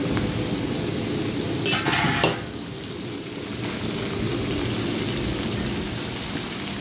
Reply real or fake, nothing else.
real